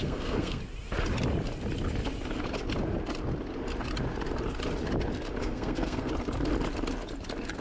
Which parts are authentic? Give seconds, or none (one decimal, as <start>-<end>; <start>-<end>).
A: 0.6-5.4; 6.1-7.6